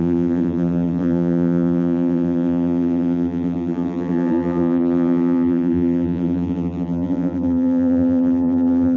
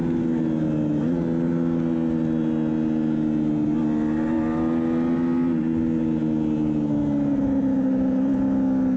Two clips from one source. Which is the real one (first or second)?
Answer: second